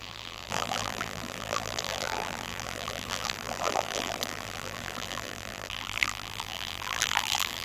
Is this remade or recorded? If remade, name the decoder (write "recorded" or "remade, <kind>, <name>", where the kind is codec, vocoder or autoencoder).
remade, vocoder, BigVGAN v2